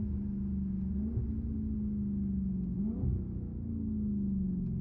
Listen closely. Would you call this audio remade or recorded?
recorded